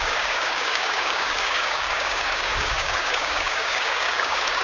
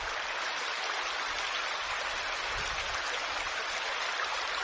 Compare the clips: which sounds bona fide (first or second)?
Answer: second